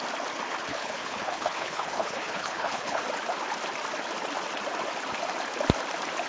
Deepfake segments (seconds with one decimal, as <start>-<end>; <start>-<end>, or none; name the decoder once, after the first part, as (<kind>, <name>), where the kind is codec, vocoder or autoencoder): 0.7-3.0 (codec, HILCodec)